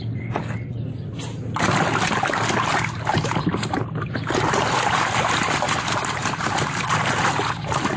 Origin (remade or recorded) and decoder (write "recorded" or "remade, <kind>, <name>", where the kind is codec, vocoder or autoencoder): recorded